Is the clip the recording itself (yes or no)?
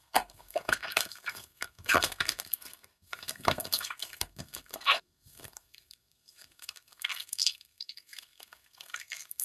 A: no